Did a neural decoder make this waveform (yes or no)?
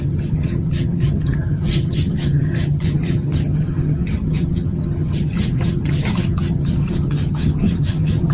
yes